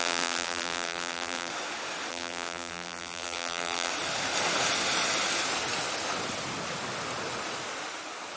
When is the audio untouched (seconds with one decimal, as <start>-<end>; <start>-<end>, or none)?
1.5-2.1; 3.9-8.4